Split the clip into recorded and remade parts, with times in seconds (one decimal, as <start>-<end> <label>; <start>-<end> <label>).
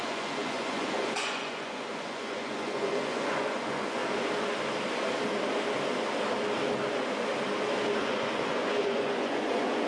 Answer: 0.0-4.0 remade; 4.0-8.0 recorded; 8.0-9.9 remade